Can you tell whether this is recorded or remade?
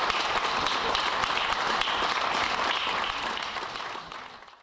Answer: recorded